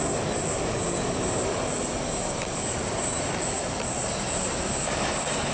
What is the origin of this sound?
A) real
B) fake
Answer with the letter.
B